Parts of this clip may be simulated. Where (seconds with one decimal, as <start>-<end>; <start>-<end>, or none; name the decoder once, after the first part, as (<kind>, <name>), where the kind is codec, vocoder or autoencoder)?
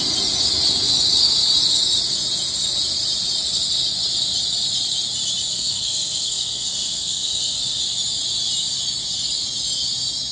5.5-7.8 (codec, SNAC)